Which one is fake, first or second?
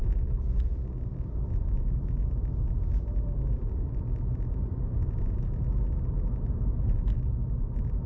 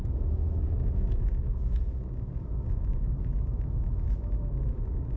second